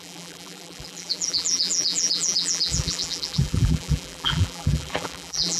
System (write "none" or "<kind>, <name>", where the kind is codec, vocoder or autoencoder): vocoder, BigVGAN v2